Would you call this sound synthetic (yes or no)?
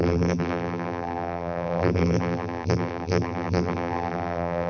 yes